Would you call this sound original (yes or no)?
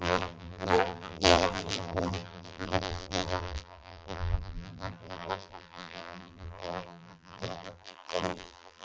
no